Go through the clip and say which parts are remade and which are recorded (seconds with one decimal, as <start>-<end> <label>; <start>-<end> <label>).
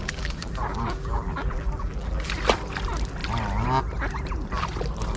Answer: 0.0-2.3 remade; 2.3-5.2 recorded